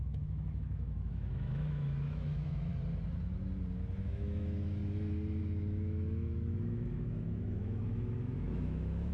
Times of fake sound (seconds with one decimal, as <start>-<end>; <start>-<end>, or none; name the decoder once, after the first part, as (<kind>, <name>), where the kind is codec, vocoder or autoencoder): 0.0-2.7 (autoencoder, DAC-VAE); 4.0-4.8; 5.4-9.1